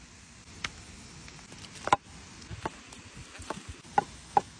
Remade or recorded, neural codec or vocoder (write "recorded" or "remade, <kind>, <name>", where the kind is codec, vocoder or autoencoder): recorded